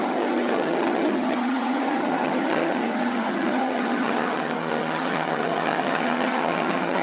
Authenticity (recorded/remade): remade